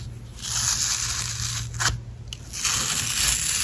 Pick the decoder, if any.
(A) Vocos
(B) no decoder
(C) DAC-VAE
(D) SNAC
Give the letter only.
B